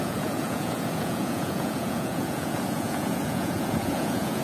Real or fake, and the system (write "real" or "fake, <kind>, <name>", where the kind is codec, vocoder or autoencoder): fake, vocoder, Vocos